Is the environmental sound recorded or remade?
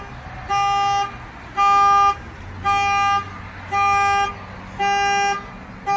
recorded